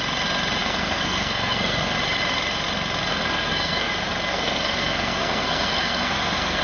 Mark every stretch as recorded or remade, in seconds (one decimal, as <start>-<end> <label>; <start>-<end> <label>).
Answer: 0.0-0.6 recorded; 0.6-1.9 remade; 1.9-3.1 recorded; 3.1-3.9 remade; 3.9-4.3 recorded; 4.3-6.6 remade